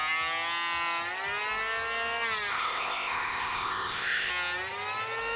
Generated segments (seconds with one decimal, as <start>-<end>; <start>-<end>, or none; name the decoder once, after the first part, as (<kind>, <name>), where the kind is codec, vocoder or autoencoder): 2.5-4.3 (codec, ZipCodec)